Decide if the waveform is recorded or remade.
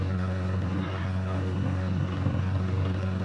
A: remade